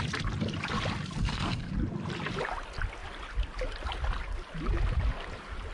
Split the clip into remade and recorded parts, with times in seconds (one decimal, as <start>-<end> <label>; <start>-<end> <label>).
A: 0.0-1.2 recorded; 1.2-1.7 remade; 1.7-5.7 recorded